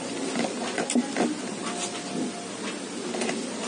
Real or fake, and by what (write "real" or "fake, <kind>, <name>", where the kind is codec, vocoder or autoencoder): real